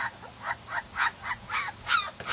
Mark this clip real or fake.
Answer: real